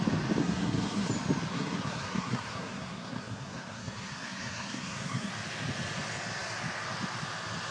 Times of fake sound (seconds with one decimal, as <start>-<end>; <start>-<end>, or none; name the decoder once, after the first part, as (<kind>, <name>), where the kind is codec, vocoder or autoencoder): 0.4-1.1 (codec, SNAC); 1.5-5.3